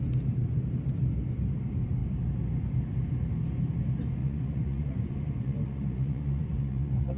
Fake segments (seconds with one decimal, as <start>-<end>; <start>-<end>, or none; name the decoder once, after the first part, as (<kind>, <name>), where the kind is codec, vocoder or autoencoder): 4.2-7.2 (vocoder, Vocos)